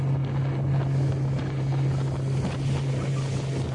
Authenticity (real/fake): real